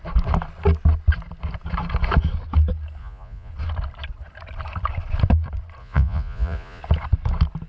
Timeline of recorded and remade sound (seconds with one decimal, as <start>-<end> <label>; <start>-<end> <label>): 0.0-3.0 recorded; 3.0-3.5 remade; 3.5-5.8 recorded; 5.8-6.8 remade; 6.8-7.7 recorded